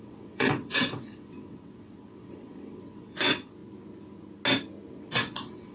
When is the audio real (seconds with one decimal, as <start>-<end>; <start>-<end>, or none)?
3.6-4.9